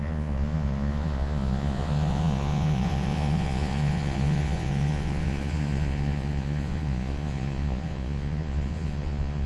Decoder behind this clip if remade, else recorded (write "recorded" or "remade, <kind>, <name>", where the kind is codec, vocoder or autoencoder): remade, vocoder, Vocos